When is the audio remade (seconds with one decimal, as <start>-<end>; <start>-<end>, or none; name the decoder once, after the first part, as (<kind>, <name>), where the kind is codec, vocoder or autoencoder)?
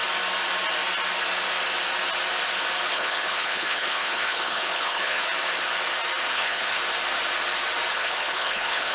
2.9-5.2 (codec, HILCodec); 6.3-6.8; 7.9-8.9